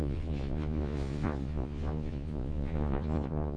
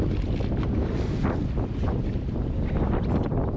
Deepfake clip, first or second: first